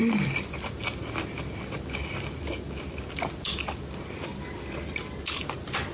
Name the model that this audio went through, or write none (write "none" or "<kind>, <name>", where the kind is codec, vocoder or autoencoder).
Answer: none